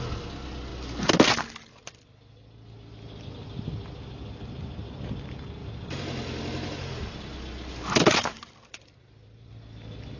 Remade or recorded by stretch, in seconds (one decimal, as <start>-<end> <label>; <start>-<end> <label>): 0.0-5.6 recorded; 5.6-9.5 remade; 9.5-10.2 recorded